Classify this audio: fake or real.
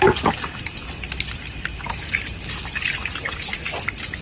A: real